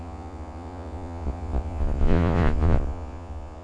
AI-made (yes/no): yes